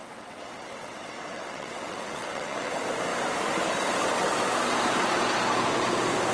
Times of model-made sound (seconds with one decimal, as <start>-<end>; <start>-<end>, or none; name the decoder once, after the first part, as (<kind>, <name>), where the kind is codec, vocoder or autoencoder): 0.0-2.7 (vocoder, WaveNeXt)